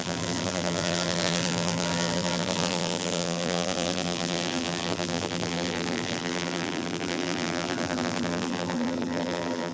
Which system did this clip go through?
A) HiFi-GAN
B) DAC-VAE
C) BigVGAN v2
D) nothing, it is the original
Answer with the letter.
C